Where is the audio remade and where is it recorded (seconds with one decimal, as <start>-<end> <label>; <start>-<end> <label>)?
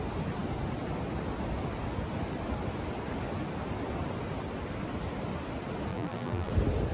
0.0-5.9 recorded; 5.9-6.5 remade; 6.5-6.9 recorded